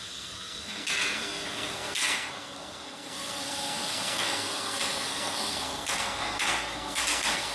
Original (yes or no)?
no